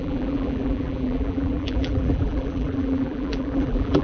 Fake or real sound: fake